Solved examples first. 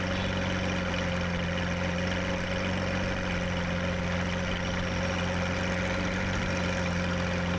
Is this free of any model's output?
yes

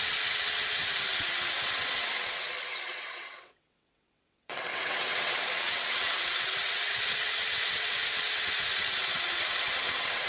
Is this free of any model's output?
no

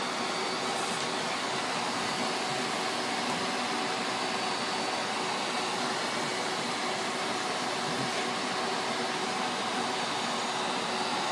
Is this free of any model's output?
yes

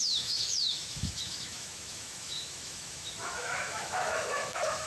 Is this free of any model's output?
no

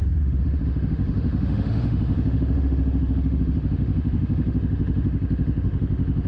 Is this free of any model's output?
no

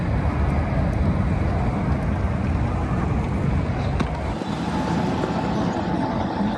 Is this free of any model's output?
yes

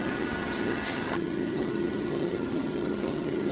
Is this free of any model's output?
no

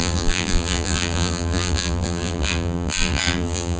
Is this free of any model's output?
no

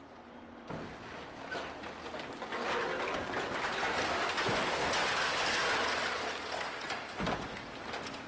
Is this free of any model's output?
yes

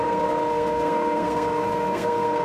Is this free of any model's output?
no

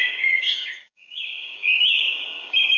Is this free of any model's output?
no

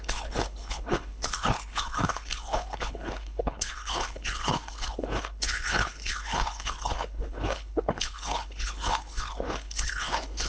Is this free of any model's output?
no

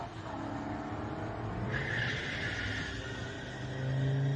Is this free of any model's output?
yes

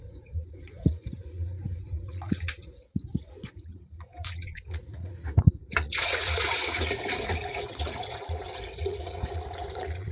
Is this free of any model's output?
no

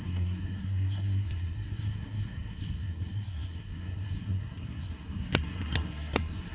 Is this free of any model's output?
no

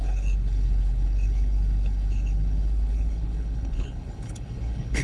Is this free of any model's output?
no